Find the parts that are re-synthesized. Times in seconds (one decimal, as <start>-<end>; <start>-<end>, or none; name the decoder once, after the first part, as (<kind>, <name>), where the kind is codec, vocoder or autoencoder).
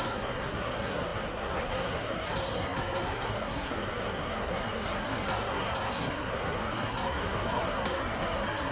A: 0.0-8.7 (codec, SNAC)